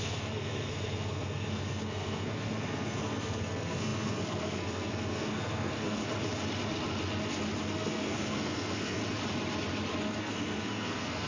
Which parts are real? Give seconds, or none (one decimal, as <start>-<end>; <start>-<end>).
6.0-7.7; 9.0-10.2